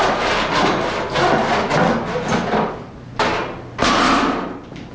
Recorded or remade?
recorded